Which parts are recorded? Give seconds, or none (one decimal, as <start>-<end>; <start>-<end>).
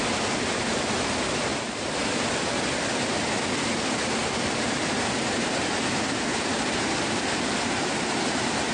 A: 0.0-1.5; 2.4-4.2; 5.6-6.3; 7.9-8.7